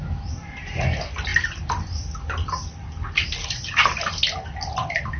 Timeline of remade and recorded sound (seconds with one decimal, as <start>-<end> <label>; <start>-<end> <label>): 0.0-5.2 recorded